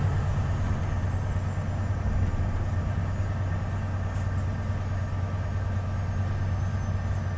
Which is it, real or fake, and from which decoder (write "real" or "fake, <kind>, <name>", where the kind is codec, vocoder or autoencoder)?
real